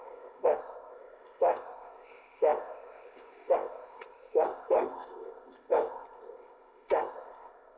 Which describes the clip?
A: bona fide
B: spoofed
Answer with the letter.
B